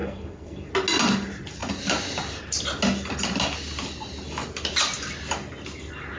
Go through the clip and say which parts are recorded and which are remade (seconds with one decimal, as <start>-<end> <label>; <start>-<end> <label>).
0.0-0.7 remade; 0.7-6.2 recorded